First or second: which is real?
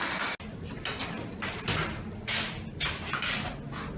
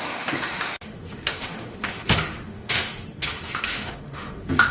first